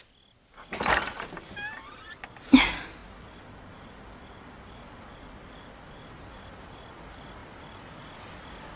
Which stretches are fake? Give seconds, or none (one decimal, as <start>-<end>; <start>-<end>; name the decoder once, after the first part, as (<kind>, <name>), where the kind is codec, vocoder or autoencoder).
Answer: 3.0-6.1 (vocoder, BigVGAN v2)